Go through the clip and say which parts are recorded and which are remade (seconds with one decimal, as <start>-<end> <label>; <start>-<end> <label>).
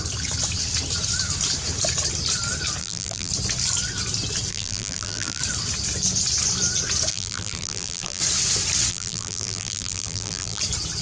0.0-2.8 recorded; 2.8-3.3 remade; 3.3-4.5 recorded; 4.5-5.4 remade; 5.4-7.1 recorded; 7.1-8.2 remade; 8.2-8.9 recorded; 8.9-10.6 remade; 10.6-11.0 recorded